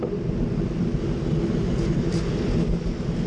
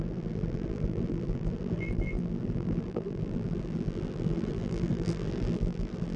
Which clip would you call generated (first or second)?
second